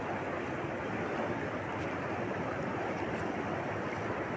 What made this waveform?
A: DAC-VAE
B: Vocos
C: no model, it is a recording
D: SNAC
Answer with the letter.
C